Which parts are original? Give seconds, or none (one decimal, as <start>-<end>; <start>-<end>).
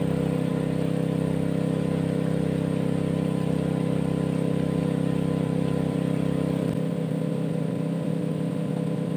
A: 0.0-4.8; 8.1-9.2